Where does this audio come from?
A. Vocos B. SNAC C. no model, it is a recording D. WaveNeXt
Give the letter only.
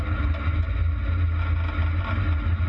C